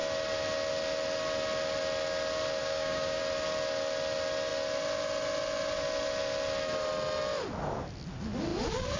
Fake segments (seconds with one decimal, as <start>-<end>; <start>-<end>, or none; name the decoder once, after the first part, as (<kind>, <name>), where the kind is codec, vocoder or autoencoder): 2.6-3.2 (codec, DAC)